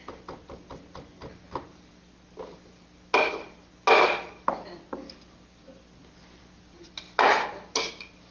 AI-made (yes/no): no